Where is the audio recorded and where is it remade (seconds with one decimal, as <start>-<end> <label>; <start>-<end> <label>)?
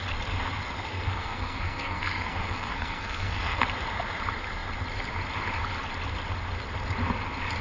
0.0-0.9 recorded; 0.9-3.6 remade; 3.6-7.6 recorded